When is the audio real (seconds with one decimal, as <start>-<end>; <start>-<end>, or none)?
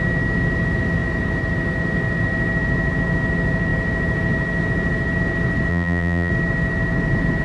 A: 0.0-5.7; 6.3-7.4